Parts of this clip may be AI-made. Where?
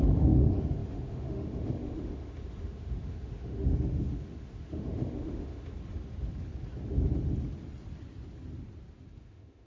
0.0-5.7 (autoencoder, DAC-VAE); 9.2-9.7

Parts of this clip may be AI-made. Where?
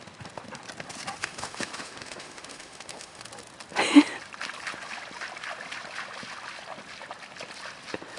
1.2-3.2 (autoencoder, DAC-VAE)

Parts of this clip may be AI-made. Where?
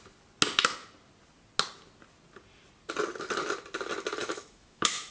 4.2-5.1 (autoencoder, DAC-VAE)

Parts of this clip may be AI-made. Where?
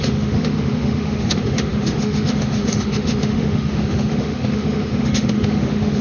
0.0-6.0 (autoencoder, DAC-VAE)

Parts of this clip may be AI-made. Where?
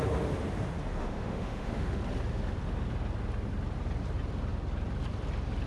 1.0-2.0 (autoencoder, DAC-VAE)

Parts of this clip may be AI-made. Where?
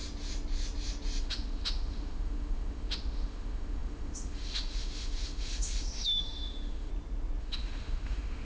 1.2-6.9 (autoencoder, DAC-VAE); 7.4-8.4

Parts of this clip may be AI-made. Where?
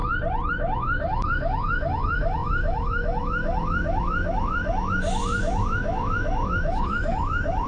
0.5-7.7 (autoencoder, DAC-VAE)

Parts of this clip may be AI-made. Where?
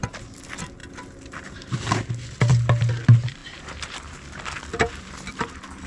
none